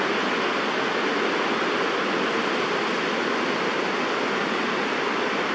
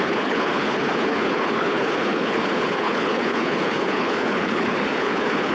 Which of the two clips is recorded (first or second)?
first